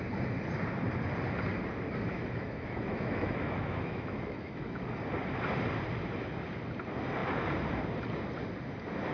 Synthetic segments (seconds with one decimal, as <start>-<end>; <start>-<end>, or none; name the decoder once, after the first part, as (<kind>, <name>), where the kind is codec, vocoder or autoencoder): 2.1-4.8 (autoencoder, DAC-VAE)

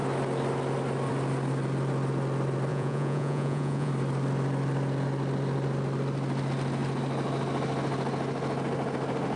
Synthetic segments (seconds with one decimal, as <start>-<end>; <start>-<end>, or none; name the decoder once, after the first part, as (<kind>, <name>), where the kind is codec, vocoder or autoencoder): 2.7-3.9 (vocoder, Vocos)

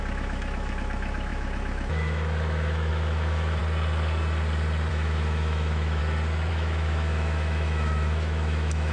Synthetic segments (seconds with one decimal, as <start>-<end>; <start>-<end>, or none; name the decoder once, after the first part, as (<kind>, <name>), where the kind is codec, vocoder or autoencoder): 0.0-3.6 (autoencoder, DAC-VAE); 4.9-6.0; 6.5-8.9